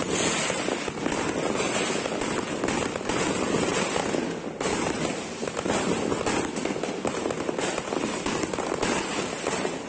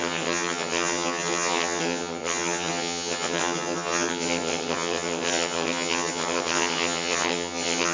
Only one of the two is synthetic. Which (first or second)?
second